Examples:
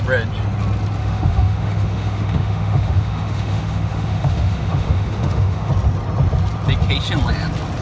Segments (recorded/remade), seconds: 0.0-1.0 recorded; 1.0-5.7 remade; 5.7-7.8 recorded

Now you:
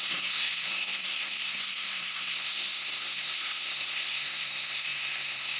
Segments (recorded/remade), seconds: 0.0-5.6 remade

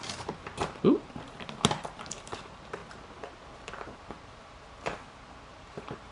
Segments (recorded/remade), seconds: 0.0-2.8 remade; 2.8-5.6 recorded; 5.6-6.1 remade

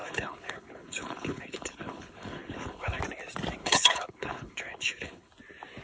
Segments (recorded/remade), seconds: 0.0-3.0 remade; 3.0-3.6 recorded; 3.6-5.3 remade; 5.3-5.8 recorded

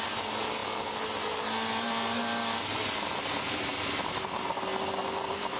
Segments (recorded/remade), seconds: 0.0-5.6 recorded

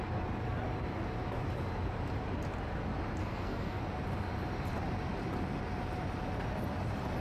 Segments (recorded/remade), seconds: 0.0-3.2 recorded; 3.2-3.8 remade; 3.8-7.2 recorded

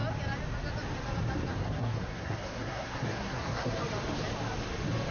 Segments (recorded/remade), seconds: 0.0-1.5 recorded; 1.5-3.8 remade; 3.8-5.1 recorded